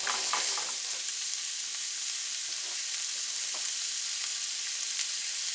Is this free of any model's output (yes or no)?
yes